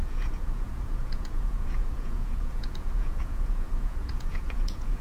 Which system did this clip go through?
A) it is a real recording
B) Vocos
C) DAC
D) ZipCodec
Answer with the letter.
B